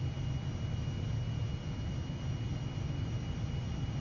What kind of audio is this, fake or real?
real